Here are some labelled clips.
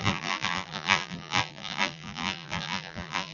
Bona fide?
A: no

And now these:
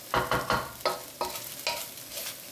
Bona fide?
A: yes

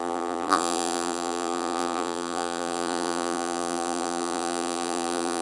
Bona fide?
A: no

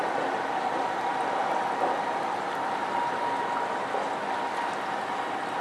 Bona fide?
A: yes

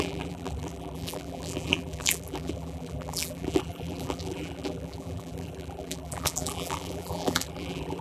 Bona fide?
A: no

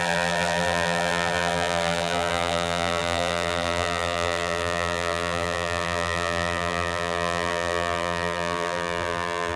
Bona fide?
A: no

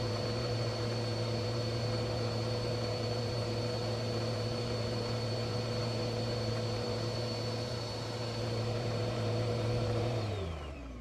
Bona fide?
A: no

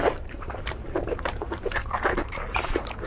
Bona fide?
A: no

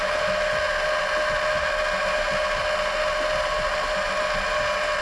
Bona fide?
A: yes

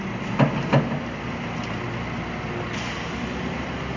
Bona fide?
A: yes